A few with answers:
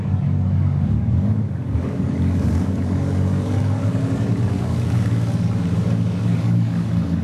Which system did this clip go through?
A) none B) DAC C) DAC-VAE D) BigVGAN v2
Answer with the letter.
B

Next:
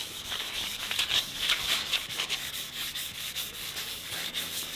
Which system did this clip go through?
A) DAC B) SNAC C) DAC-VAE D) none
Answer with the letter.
A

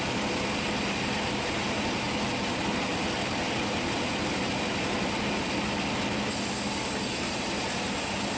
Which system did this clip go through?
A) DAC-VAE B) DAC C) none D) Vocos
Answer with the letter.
C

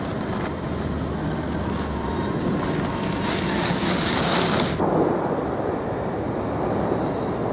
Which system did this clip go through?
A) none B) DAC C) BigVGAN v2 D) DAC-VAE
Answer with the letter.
A